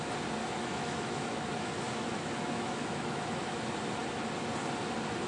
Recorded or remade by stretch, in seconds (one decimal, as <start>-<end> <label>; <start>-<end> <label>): 0.0-0.4 recorded; 0.4-3.6 remade; 3.6-5.3 recorded